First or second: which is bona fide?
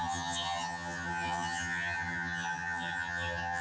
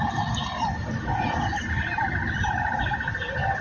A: second